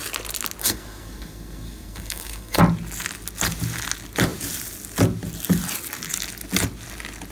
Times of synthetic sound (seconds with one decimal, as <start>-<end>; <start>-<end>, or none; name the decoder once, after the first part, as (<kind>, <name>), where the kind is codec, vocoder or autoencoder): 0.6-2.6 (codec, SNAC)